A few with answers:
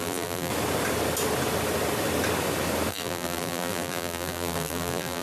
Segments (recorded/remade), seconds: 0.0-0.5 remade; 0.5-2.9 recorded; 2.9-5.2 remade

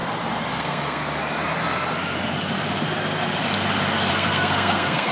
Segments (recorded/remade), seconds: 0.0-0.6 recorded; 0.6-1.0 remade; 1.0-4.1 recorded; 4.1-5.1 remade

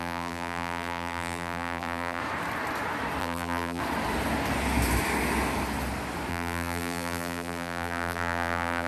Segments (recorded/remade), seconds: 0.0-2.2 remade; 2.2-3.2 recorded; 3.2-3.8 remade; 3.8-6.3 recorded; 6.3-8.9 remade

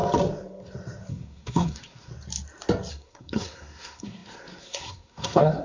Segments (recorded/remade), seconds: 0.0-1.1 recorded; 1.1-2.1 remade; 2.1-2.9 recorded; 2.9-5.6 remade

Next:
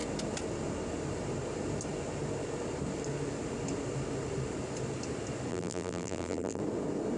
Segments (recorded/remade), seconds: 0.0-5.5 recorded; 5.5-6.6 remade; 6.6-7.2 recorded

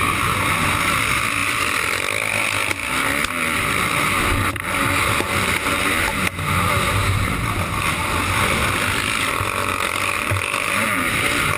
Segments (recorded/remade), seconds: 0.0-9.7 recorded; 9.7-11.1 remade; 11.1-11.6 recorded

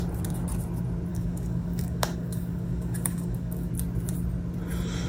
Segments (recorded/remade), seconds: 0.0-1.1 recorded; 1.1-3.7 remade; 3.7-5.1 recorded

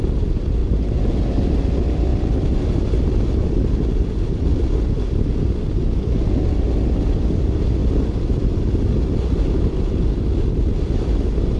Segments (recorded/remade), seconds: 0.0-11.6 recorded